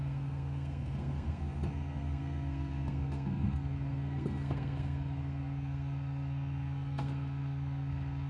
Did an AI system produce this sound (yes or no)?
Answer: yes